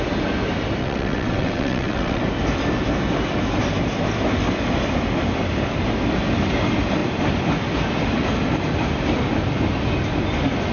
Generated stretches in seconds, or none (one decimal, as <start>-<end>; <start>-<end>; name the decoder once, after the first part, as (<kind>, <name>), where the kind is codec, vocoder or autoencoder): 0.8-2.2 (vocoder, WaveNeXt)